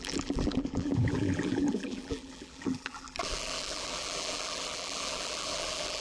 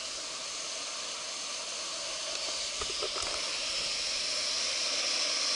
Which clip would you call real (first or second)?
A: second